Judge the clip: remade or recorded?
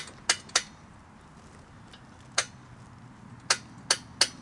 recorded